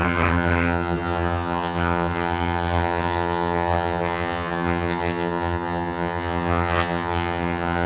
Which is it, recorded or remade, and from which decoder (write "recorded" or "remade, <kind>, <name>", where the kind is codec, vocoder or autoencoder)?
remade, vocoder, HiFi-GAN